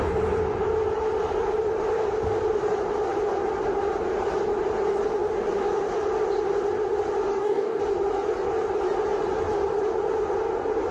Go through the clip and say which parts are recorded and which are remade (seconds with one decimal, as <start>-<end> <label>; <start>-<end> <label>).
0.0-7.3 recorded; 7.3-7.8 remade; 7.8-10.9 recorded